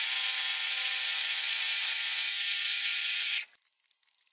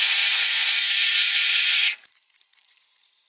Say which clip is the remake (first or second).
second